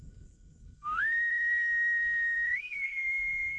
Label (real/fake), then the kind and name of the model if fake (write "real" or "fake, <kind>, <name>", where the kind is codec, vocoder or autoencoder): fake, codec, SNAC